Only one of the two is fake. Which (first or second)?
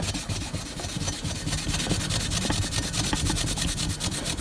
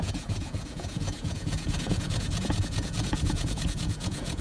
second